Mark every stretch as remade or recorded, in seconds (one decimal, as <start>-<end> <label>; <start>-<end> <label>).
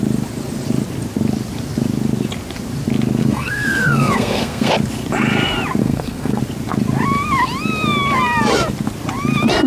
0.0-3.2 recorded; 3.2-4.7 remade; 4.7-5.8 recorded; 5.8-6.4 remade; 6.4-9.7 recorded